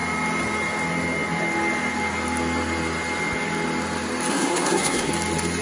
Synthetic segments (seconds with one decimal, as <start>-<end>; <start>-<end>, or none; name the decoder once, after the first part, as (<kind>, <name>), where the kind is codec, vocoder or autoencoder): 4.3-5.1 (codec, SNAC)